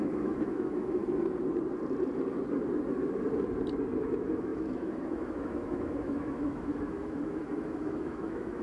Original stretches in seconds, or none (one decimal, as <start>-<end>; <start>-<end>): 1.0-4.0